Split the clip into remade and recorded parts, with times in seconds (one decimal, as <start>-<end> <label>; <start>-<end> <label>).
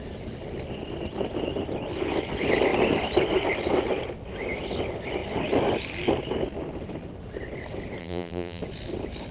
0.0-8.0 recorded; 8.0-8.6 remade; 8.6-9.3 recorded